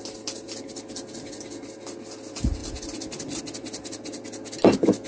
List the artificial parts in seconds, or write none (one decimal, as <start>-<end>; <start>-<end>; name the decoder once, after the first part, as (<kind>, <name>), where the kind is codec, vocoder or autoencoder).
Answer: none

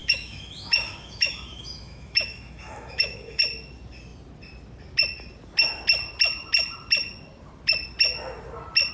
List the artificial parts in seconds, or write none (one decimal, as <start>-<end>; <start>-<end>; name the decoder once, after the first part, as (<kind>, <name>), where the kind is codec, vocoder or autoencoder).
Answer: 0.0-3.4 (autoencoder, DAC-VAE)

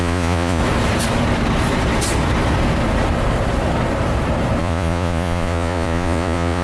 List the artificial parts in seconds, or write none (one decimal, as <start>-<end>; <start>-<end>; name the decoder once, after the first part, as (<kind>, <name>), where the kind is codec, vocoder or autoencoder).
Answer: 0.0-0.6 (vocoder, Vocos); 4.6-6.6

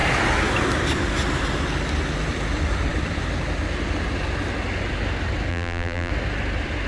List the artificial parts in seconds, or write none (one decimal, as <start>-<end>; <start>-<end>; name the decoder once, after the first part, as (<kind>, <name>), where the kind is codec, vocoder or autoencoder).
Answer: 5.5-6.1 (vocoder, BigVGAN v2)

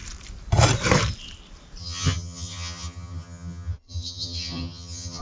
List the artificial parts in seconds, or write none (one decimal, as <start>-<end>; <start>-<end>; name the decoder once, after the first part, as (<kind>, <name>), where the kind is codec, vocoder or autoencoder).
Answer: 1.8-5.2 (vocoder, HiFi-GAN)